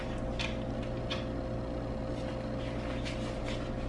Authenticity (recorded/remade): recorded